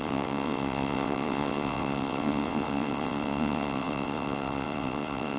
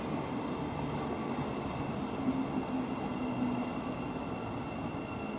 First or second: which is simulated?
first